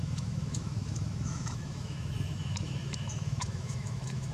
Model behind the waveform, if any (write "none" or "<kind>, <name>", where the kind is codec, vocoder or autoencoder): autoencoder, DAC-VAE